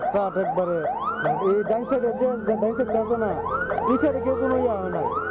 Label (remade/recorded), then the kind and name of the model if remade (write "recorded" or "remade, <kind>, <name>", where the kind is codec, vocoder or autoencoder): recorded